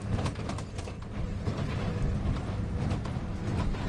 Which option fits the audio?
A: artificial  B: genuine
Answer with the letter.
B